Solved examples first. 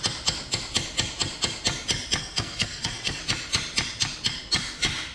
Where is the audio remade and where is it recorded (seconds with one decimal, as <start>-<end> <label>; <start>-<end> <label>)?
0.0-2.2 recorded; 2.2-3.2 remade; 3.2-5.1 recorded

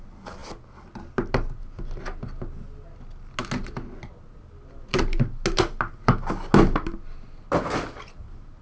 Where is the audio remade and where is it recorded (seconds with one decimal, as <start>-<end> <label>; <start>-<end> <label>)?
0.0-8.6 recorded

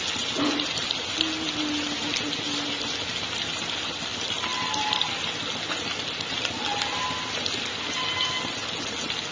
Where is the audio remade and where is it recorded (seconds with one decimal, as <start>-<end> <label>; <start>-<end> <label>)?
0.0-9.3 recorded

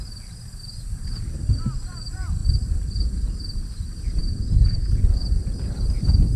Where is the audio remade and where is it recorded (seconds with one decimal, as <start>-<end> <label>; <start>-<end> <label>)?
0.0-4.2 remade; 4.2-4.9 recorded; 4.9-6.4 remade

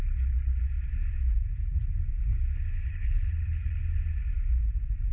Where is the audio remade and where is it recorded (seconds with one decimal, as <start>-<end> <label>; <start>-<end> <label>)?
0.0-0.6 remade; 0.6-2.9 recorded; 2.9-3.8 remade; 3.8-5.1 recorded

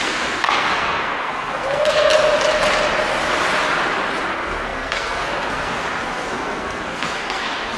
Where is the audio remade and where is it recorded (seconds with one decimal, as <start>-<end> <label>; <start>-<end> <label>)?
0.0-2.1 remade; 2.1-4.3 recorded; 4.3-7.8 remade

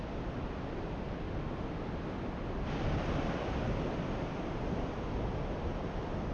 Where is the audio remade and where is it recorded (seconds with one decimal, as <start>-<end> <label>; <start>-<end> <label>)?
0.0-6.3 recorded

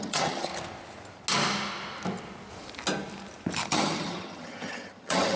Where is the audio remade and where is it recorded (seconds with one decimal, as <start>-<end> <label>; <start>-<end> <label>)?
0.0-0.5 remade; 0.5-3.7 recorded; 3.7-5.4 remade